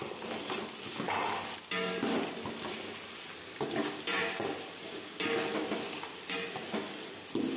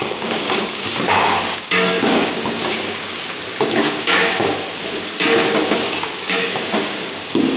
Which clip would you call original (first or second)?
first